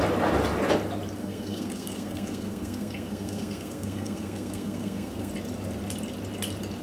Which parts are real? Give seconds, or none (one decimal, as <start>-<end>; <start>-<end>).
0.0-1.2; 5.3-6.8